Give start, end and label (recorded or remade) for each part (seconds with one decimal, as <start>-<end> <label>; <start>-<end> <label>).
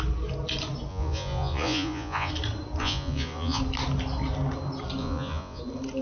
0.0-0.9 recorded; 0.9-2.3 remade; 2.3-2.8 recorded; 2.8-3.6 remade; 3.6-5.0 recorded; 5.0-5.6 remade; 5.6-6.0 recorded